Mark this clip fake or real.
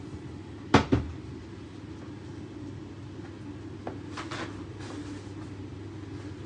real